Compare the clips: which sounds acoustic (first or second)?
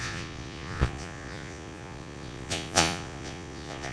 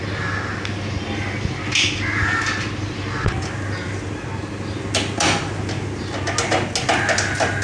second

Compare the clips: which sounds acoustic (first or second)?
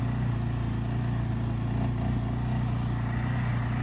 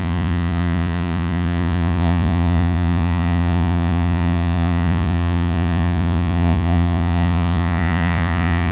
first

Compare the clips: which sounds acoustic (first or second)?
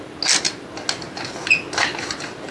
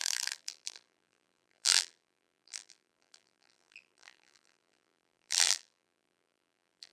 first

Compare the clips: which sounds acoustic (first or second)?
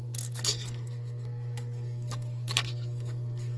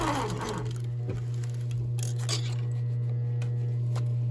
second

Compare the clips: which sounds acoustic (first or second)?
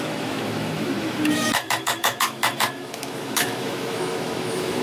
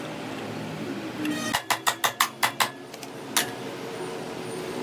second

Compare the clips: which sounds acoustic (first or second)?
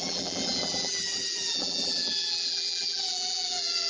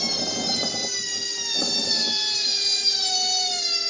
second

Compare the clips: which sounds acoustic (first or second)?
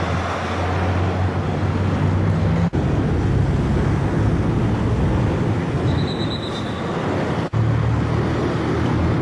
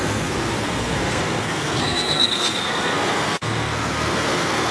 first